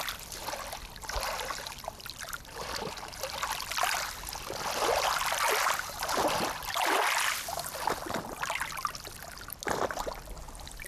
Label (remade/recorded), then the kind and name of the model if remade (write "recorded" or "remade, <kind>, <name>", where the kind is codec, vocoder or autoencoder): recorded